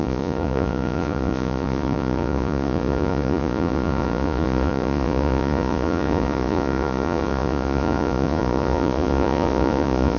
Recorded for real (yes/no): no